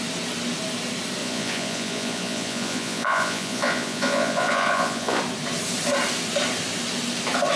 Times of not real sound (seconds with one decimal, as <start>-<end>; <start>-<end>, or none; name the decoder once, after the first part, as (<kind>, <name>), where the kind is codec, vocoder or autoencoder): 1.2-5.2 (vocoder, Vocos)